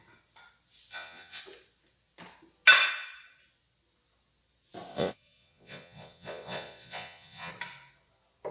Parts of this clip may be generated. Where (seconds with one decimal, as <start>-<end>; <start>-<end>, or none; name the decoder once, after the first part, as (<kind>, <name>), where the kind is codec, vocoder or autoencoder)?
0.9-1.4 (vocoder, Vocos); 4.9-7.5